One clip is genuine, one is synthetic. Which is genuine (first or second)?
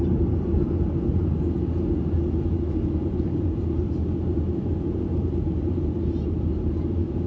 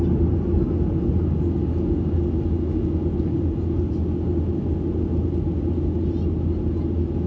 second